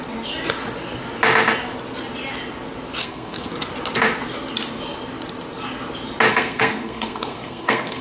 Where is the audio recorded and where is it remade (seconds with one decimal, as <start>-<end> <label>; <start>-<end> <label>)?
0.0-3.0 recorded; 3.0-3.5 remade; 3.5-6.3 recorded; 6.3-8.0 remade